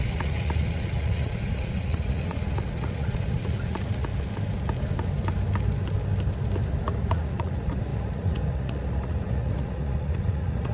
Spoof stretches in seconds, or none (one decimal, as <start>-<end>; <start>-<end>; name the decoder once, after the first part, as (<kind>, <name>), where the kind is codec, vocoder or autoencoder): 0.0-4.1 (vocoder, Vocos); 7.1-10.7